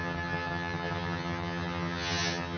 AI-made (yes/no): yes